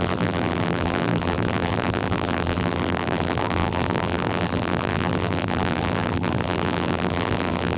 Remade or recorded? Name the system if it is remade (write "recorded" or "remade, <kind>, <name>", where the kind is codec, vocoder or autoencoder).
remade, vocoder, BigVGAN v2